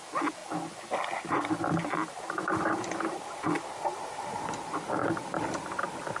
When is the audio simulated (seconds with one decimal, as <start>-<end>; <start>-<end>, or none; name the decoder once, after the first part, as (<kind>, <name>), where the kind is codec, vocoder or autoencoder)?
none